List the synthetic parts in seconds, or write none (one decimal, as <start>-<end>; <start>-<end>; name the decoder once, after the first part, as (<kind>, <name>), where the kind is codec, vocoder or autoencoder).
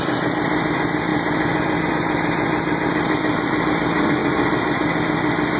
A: none